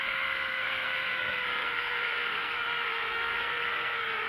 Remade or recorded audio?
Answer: remade